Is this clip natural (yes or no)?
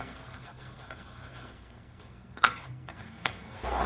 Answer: no